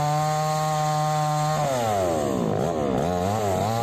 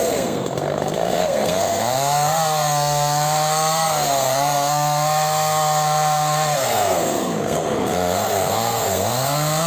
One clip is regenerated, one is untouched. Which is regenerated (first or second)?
second